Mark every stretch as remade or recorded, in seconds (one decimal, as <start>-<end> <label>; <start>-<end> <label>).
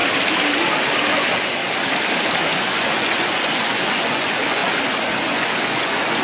0.0-1.1 recorded; 1.1-1.6 remade; 1.6-2.5 recorded; 2.5-6.2 remade